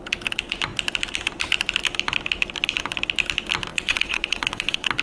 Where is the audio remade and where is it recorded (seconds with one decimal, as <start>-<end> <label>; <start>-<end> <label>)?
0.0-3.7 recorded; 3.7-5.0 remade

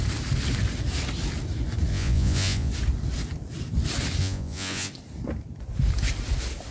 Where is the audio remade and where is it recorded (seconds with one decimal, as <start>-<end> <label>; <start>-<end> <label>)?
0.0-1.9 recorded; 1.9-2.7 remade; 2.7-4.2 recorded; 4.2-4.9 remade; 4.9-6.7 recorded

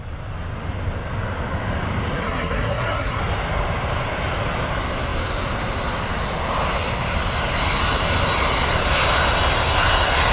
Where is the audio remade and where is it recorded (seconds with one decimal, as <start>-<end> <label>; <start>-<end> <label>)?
0.0-2.2 recorded; 2.2-3.2 remade; 3.2-10.3 recorded